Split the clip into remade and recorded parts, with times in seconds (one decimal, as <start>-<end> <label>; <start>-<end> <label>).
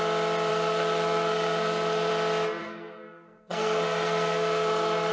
0.0-0.5 recorded; 0.5-2.1 remade; 2.1-2.6 recorded; 2.6-5.1 remade